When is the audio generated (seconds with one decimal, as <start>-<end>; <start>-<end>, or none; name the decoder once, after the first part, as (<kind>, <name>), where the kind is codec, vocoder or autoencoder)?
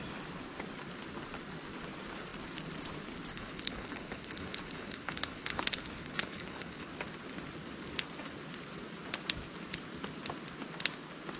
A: 3.3-5.6 (codec, HILCodec); 6.0-6.9